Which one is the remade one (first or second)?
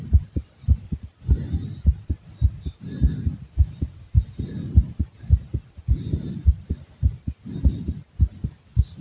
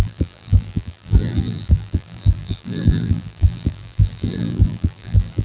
second